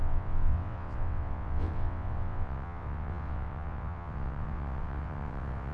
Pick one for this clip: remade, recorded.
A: remade